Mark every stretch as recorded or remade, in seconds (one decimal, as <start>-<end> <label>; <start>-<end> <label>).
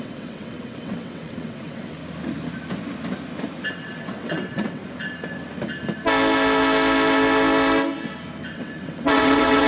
0.0-2.0 remade; 2.0-3.7 recorded; 3.7-4.8 remade; 4.8-8.5 recorded; 8.5-9.7 remade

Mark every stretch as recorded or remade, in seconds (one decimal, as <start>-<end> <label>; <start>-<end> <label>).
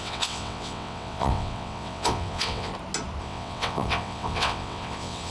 0.0-2.7 remade; 2.7-3.2 recorded; 3.2-5.3 remade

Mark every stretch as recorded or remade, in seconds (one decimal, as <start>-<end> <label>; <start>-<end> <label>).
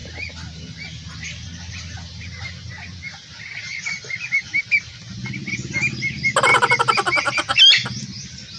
0.0-8.6 recorded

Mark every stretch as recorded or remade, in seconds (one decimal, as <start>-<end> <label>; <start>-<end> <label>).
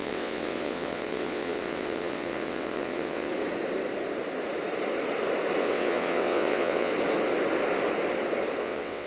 0.0-3.3 remade; 3.3-5.6 recorded; 5.6-6.9 remade; 6.9-8.6 recorded; 8.6-9.1 remade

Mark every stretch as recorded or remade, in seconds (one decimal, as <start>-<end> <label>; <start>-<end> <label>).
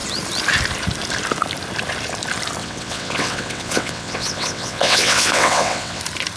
0.0-2.6 recorded; 2.6-6.0 remade; 6.0-6.4 recorded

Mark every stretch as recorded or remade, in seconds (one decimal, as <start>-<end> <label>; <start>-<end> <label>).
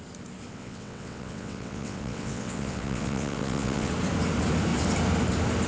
0.0-0.5 recorded; 0.5-3.9 remade; 3.9-5.7 recorded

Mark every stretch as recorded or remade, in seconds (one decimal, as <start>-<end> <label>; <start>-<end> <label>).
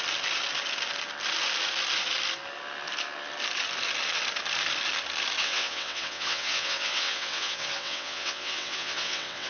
0.0-5.4 recorded; 5.4-9.5 remade